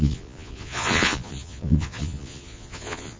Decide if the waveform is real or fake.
fake